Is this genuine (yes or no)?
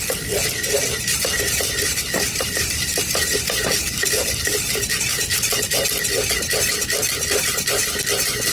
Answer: yes